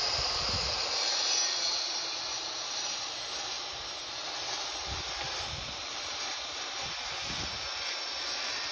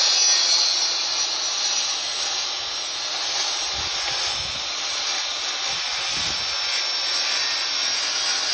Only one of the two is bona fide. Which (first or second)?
second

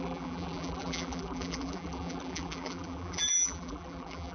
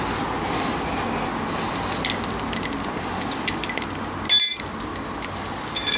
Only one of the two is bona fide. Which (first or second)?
second